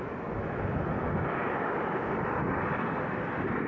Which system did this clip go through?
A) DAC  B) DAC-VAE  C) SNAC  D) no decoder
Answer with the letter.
D